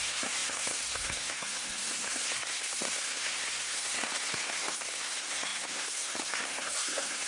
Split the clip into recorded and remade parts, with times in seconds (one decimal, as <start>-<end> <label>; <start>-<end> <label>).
0.0-7.3 remade